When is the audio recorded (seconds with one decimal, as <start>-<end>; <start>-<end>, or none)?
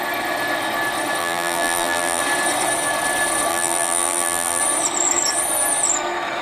0.0-1.2; 2.2-3.5; 4.6-6.4